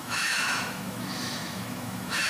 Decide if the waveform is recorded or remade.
remade